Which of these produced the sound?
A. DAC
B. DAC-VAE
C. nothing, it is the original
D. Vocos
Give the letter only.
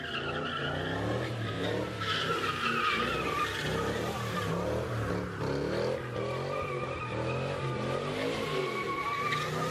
C